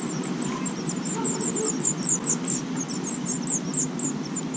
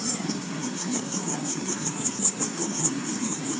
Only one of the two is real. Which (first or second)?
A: first